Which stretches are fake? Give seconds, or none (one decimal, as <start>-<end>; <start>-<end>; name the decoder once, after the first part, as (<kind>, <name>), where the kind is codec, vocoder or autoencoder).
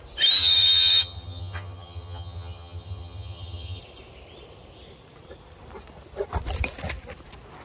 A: 0.4-3.8 (vocoder, HiFi-GAN)